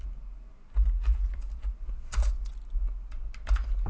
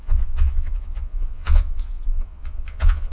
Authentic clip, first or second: first